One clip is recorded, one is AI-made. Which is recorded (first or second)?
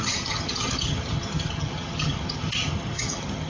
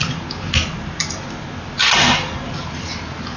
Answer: second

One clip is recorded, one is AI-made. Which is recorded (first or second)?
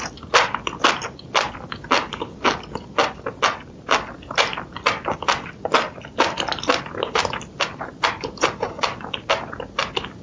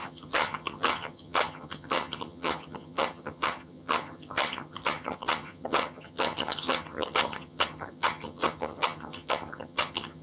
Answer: first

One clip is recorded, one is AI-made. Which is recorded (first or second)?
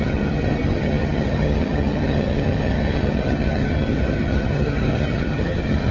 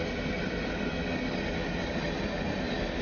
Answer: second